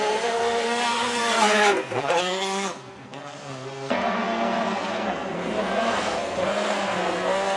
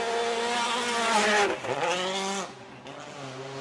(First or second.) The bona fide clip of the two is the second